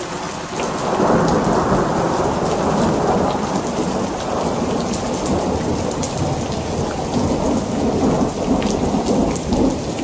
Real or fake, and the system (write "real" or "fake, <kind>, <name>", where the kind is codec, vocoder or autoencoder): real